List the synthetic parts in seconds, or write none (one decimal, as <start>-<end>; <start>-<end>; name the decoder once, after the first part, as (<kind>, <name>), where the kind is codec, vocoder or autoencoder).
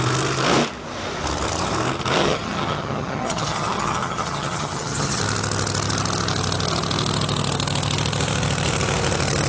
2.2-5.2 (vocoder, HiFi-GAN)